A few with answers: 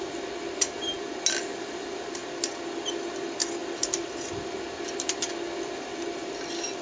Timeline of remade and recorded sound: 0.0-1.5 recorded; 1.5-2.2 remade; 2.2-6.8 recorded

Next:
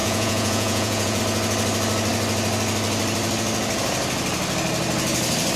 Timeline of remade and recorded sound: 0.0-1.2 remade; 1.2-5.6 recorded

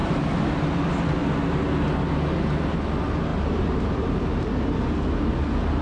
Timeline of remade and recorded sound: 0.0-0.7 remade; 0.7-3.3 recorded; 3.3-4.8 remade; 4.8-5.8 recorded

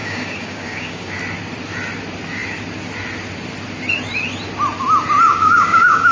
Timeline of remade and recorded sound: 0.0-1.1 remade; 1.1-5.3 recorded; 5.3-6.1 remade